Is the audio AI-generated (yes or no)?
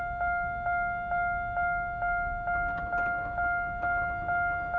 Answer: no